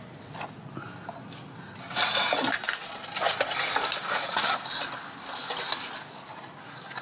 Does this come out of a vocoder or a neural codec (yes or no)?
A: no